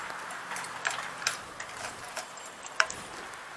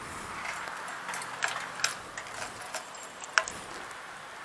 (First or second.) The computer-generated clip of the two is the first